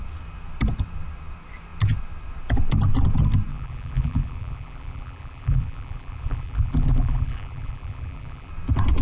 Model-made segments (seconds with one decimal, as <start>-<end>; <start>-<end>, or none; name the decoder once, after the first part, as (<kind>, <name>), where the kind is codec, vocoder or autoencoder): 3.5-8.5 (vocoder, BigVGAN v2)